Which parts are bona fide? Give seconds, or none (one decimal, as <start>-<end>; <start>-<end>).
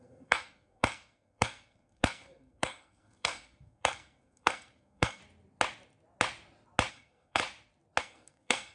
5.2-6.9; 7.4-8.0